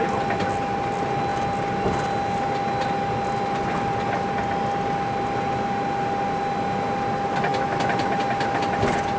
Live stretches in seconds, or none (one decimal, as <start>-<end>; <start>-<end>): 0.0-9.2

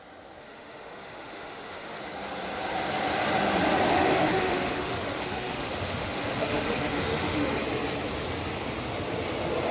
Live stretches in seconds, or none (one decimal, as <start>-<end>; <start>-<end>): 0.0-0.4; 2.0-3.9; 7.5-9.7

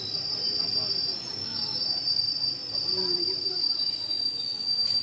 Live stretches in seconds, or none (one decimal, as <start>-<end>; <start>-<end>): 0.0-1.4; 2.0-5.0

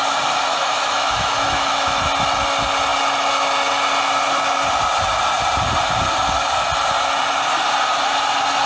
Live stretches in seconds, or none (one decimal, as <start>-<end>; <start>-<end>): 0.0-0.5; 2.0-8.7

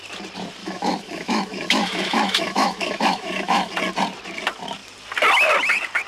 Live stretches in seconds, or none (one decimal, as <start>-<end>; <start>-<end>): 0.0-0.6; 3.7-6.1

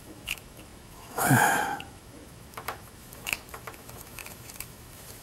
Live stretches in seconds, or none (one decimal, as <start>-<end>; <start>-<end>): none

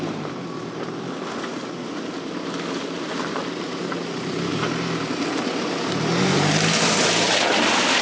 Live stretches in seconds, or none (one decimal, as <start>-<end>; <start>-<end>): 0.0-8.0

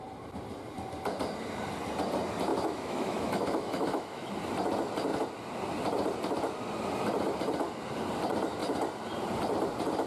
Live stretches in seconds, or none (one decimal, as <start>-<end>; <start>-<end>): 0.0-2.5; 4.3-10.1